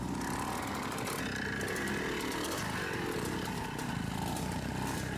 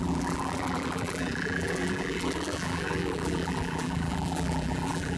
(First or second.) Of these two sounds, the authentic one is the first